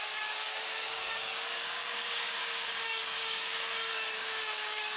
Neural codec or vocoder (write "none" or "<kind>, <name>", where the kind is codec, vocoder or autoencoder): codec, DAC